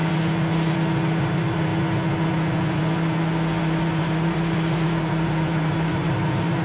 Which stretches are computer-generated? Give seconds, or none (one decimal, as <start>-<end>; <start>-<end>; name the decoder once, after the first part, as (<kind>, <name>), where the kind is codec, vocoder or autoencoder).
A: 1.2-1.7 (vocoder, BigVGAN v2); 3.6-6.6